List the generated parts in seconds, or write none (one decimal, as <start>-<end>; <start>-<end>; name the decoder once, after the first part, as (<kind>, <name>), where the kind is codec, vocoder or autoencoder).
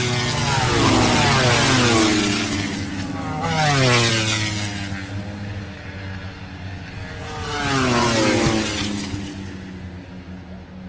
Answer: none